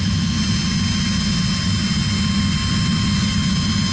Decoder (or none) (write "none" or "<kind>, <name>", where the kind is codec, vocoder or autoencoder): none